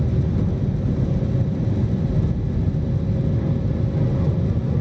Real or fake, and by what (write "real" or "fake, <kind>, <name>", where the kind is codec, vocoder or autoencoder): real